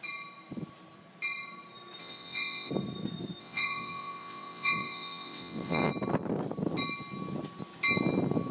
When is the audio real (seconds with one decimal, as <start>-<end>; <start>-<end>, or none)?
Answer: 0.0-2.0; 2.7-3.4; 5.9-8.5